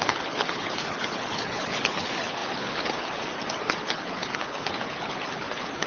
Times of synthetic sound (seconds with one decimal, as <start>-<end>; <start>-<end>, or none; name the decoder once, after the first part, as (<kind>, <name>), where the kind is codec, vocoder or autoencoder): 0.0-3.3 (codec, HILCodec); 3.8-5.9